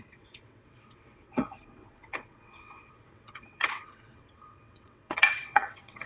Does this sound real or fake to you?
fake